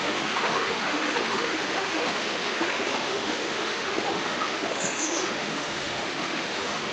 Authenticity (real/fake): fake